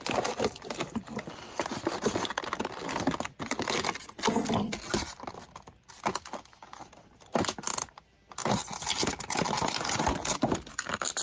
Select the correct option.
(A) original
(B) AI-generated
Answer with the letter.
A